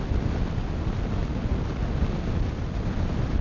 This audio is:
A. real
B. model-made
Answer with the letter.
A